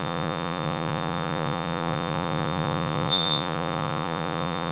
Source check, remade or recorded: remade